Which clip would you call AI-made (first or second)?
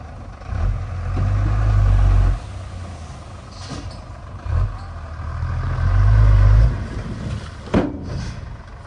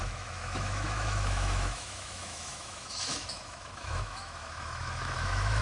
second